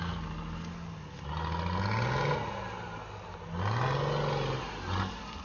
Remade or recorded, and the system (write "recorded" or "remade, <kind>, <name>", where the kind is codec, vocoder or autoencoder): recorded